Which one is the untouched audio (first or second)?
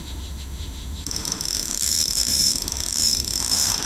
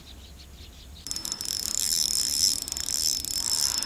second